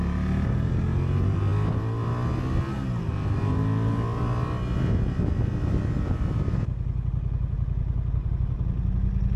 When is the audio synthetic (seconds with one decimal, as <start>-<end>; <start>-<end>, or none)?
none